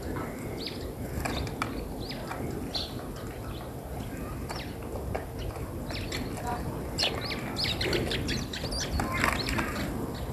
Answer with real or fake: real